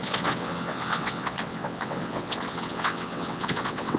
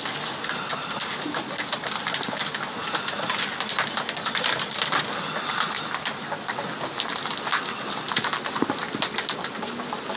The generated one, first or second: first